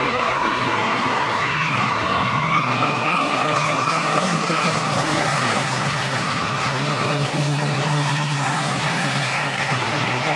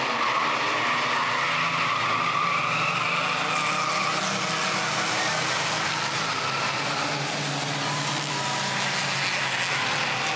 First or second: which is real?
second